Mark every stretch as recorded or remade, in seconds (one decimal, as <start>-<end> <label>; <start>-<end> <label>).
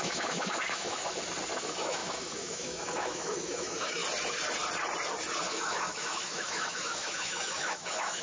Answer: 0.0-1.0 remade; 1.0-1.6 recorded; 1.6-4.0 remade; 4.0-5.5 recorded; 5.5-8.2 remade